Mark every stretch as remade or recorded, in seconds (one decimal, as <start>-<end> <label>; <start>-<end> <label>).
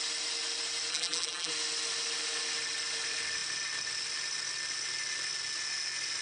0.0-0.9 recorded; 0.9-1.5 remade; 1.5-6.2 recorded